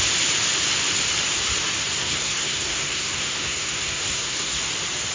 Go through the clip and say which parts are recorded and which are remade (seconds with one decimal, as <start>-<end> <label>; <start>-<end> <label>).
0.0-2.0 recorded; 2.0-4.6 remade; 4.6-5.1 recorded